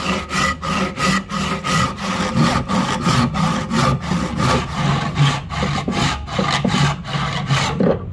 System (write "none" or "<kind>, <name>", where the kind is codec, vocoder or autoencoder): none